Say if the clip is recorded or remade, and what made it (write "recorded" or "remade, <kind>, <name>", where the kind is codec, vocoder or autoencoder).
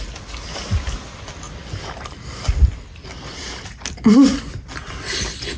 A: recorded